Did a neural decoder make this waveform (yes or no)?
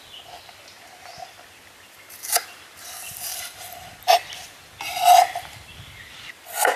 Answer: no